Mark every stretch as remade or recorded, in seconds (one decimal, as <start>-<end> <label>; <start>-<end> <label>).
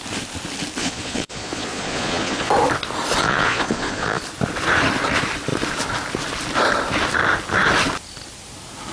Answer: 0.0-0.8 recorded; 0.8-2.5 remade; 2.5-3.2 recorded; 3.2-4.2 remade; 4.2-8.9 recorded